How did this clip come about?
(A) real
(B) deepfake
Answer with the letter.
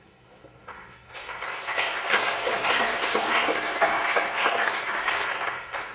B